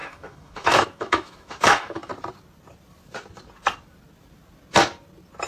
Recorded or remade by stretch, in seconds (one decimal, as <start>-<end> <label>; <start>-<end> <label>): 0.0-2.1 remade; 2.1-5.5 recorded